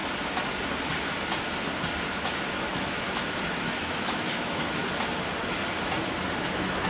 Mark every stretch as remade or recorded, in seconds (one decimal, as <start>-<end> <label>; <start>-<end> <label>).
0.0-2.5 recorded; 2.5-4.8 remade; 4.8-6.4 recorded; 6.4-6.9 remade